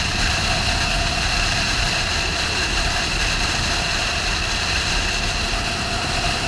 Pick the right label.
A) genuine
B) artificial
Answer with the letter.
B